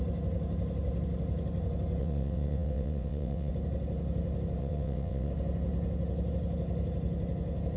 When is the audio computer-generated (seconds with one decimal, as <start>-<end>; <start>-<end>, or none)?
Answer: 2.0-3.5; 4.6-5.3